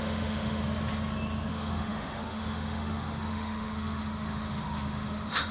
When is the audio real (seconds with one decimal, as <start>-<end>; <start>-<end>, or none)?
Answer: 0.6-1.5